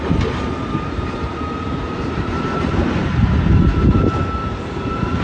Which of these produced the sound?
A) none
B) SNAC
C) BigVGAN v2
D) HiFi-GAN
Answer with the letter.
C